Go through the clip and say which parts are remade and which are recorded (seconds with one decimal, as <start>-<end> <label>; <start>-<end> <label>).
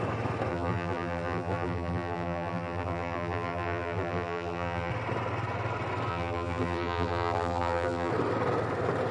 0.0-0.5 recorded; 0.5-4.9 remade; 4.9-6.1 recorded; 6.1-8.1 remade; 8.1-9.1 recorded